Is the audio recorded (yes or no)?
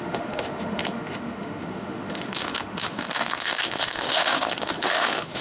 no